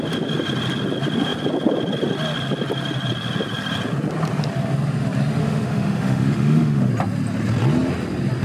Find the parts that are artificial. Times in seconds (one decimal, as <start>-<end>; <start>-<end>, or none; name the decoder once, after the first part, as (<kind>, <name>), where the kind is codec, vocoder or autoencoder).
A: 5.4-6.9 (autoencoder, DAC-VAE)